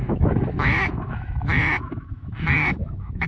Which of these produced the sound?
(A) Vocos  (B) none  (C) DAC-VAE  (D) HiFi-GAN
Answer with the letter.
C